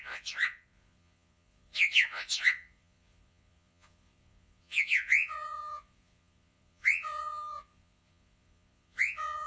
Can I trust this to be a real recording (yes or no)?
no